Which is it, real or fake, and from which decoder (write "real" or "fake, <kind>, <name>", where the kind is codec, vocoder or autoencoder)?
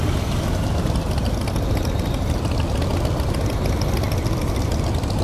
real